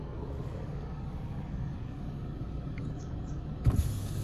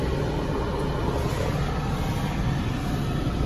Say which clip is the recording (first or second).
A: second